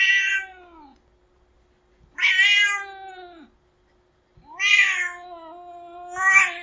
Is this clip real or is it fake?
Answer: real